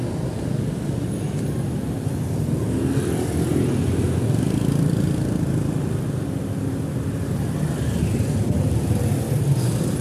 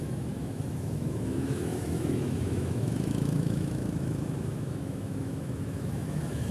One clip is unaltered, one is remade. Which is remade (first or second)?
second